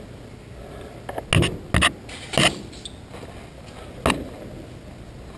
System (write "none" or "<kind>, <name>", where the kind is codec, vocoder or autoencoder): none